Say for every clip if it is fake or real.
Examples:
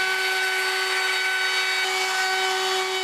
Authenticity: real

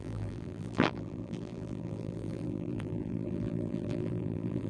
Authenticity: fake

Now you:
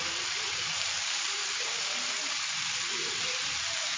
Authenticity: fake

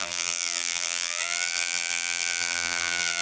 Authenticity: fake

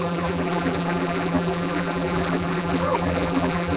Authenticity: fake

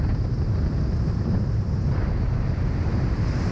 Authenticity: fake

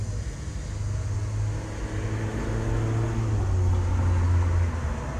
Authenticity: real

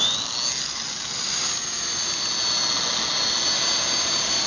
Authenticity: real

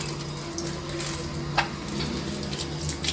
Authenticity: real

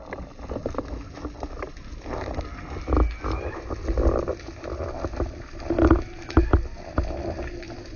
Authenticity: real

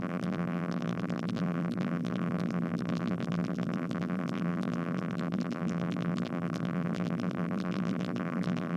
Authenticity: fake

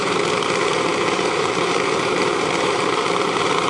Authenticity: fake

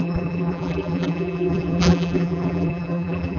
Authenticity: fake